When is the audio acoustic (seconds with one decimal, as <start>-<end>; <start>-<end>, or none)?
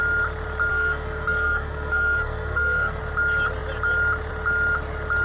0.0-0.7; 3.0-5.2